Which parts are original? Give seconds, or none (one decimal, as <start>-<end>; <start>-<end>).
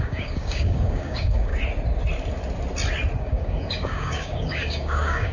1.5-3.2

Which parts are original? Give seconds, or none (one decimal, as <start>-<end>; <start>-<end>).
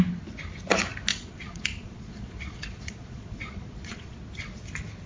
0.0-1.1; 4.2-5.1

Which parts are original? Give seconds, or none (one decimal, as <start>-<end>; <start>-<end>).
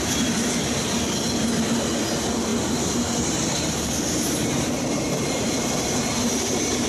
0.0-2.5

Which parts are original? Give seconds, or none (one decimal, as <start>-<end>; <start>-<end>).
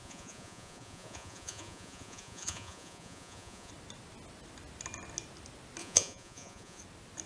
3.7-5.8; 6.8-7.3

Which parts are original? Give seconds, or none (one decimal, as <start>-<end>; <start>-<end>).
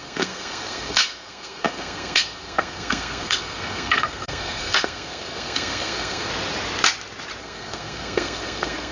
6.3-7.4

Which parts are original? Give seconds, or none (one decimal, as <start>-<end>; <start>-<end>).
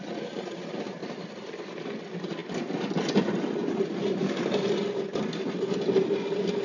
0.0-6.6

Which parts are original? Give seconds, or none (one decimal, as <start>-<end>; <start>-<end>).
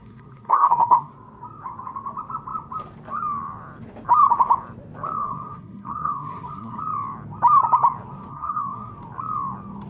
1.1-5.2; 6.8-8.3; 8.9-9.9